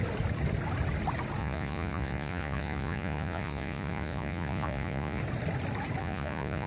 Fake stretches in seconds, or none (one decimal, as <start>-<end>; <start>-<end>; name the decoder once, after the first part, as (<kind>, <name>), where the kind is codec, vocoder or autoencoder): 1.4-5.2 (vocoder, Vocos); 6.0-6.7